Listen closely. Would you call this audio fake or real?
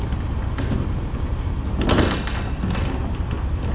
real